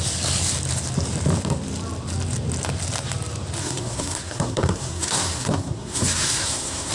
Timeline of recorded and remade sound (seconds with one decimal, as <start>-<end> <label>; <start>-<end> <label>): 0.0-3.6 recorded; 3.6-6.9 remade